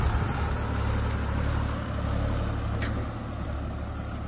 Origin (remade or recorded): recorded